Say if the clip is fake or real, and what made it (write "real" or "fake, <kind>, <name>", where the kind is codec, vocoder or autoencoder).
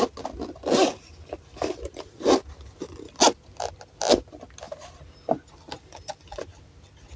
real